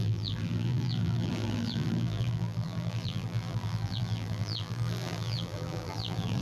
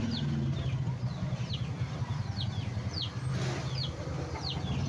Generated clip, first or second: first